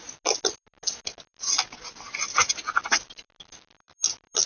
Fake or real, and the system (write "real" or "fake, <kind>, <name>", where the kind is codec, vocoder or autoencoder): real